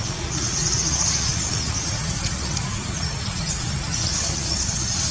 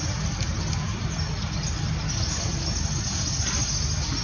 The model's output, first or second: first